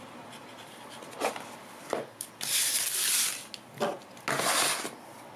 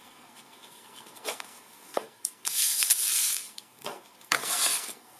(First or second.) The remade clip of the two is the second